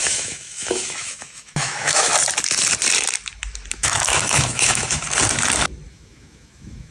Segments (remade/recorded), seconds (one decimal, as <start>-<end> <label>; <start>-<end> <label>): 0.0-2.1 remade; 2.1-3.7 recorded; 3.7-5.0 remade; 5.0-5.9 recorded; 5.9-6.9 remade